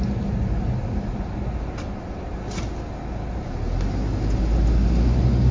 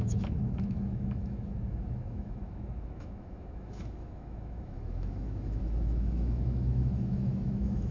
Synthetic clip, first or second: second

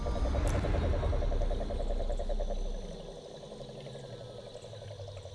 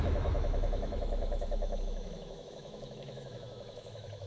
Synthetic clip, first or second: second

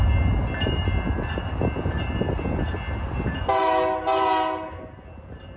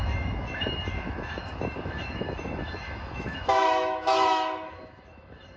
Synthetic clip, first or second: second